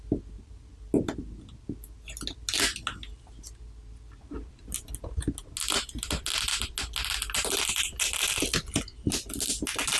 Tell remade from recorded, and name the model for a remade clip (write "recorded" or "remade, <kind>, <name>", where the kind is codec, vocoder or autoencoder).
recorded